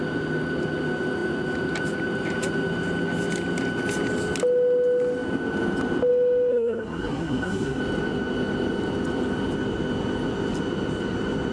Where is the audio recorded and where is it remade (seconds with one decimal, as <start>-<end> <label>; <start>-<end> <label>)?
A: 0.0-6.5 recorded; 6.5-7.8 remade; 7.8-11.5 recorded